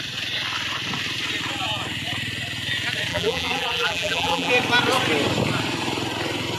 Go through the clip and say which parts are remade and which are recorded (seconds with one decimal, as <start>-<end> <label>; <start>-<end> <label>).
0.0-3.1 recorded; 3.1-4.5 remade; 4.5-6.6 recorded